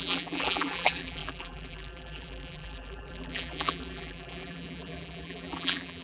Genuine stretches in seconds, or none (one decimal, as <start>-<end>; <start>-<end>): none